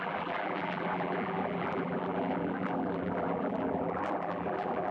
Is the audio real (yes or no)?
no